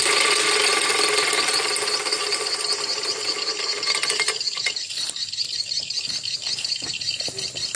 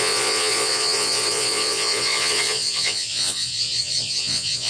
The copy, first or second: second